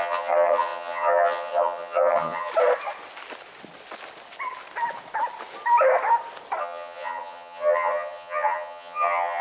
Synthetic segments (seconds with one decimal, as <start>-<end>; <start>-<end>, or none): 0.0-2.5; 6.6-9.4